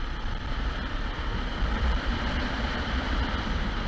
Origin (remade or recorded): remade